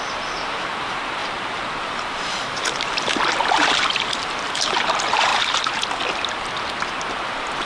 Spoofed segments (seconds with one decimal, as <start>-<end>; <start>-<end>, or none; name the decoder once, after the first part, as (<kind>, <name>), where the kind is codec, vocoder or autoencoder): 0.0-5.3 (vocoder, BigVGAN v2); 7.2-7.7